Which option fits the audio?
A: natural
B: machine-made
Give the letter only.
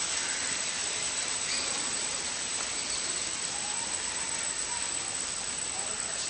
A